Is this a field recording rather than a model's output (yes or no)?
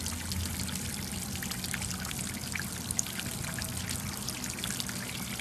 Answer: yes